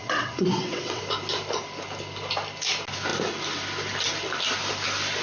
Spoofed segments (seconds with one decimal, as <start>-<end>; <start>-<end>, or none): 0.0-1.0